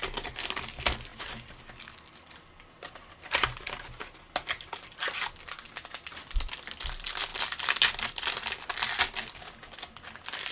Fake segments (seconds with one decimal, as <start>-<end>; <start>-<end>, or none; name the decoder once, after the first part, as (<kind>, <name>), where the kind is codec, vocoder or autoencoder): none